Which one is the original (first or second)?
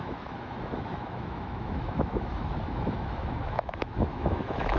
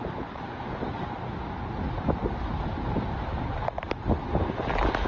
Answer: second